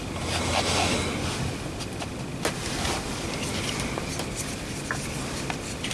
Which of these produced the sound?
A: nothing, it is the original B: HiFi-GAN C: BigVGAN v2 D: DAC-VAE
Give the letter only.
A